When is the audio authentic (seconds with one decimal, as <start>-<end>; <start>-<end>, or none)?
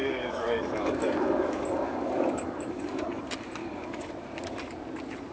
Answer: 3.2-3.6; 4.1-5.3